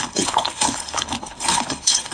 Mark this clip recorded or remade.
remade